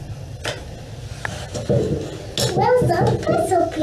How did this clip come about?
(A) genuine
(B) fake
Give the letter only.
A